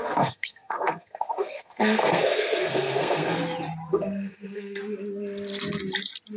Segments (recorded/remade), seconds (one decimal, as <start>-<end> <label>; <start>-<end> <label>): 0.0-3.4 remade; 3.4-3.9 recorded; 3.9-4.8 remade; 4.8-6.4 recorded